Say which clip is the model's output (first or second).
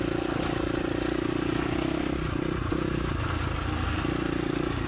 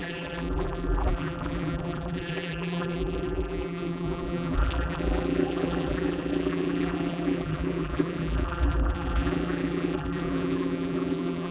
second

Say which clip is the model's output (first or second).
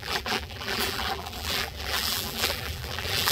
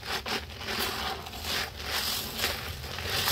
first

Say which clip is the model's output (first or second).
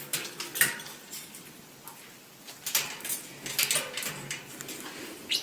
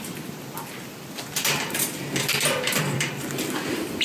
second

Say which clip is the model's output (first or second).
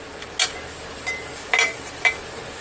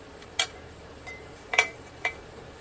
second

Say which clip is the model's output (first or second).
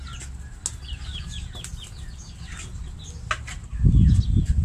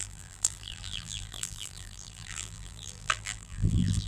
second